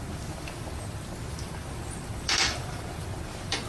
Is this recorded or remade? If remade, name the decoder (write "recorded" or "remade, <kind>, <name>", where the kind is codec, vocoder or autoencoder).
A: remade, vocoder, BigVGAN v2